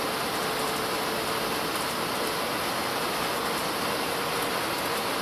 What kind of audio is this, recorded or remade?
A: recorded